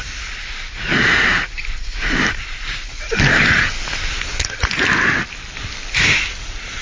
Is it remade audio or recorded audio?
recorded